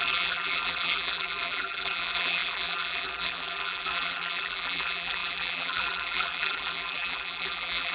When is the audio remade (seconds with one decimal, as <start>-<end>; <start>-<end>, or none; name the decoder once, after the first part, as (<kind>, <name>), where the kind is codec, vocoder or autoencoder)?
0.0-7.9 (vocoder, BigVGAN v2)